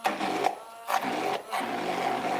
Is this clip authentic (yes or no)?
yes